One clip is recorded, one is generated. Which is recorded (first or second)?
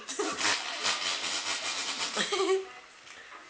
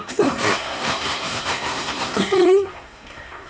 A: first